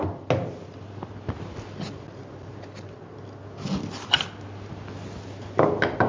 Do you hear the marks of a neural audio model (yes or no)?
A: no